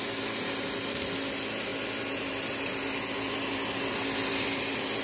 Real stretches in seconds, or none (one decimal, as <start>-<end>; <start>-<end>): 0.0-5.0